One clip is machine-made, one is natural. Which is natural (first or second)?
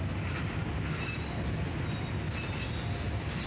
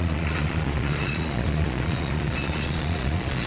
first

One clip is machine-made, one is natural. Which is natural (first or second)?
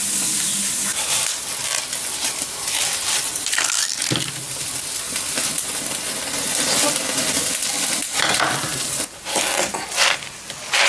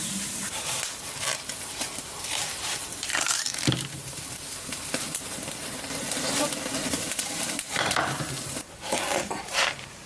first